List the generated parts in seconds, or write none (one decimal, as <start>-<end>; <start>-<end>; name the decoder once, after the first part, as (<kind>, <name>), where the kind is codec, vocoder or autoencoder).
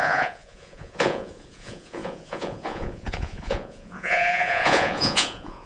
0.0-5.7 (vocoder, Vocos)